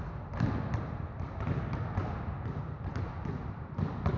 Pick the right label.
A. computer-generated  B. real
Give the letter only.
B